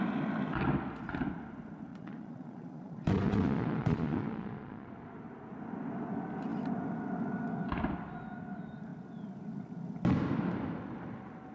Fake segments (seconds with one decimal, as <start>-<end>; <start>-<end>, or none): 1.9-4.9